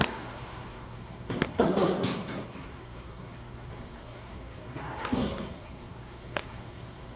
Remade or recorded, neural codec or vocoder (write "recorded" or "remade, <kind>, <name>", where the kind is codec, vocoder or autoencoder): remade, codec, SNAC